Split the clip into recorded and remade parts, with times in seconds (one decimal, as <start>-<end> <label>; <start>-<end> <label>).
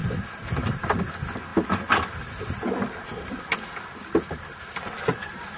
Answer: 0.0-5.6 recorded